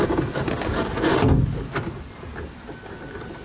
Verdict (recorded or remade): recorded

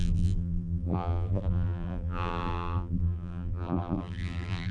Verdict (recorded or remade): remade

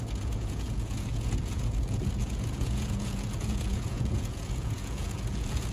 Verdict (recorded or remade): remade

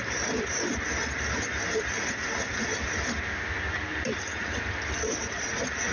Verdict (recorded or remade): recorded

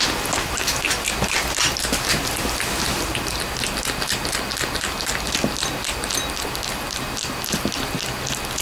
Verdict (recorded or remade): recorded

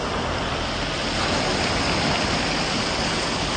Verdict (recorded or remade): recorded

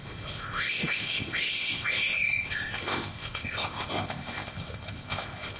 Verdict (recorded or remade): remade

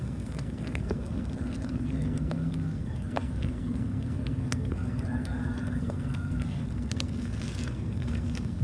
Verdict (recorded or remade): remade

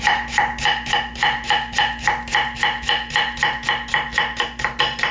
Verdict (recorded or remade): recorded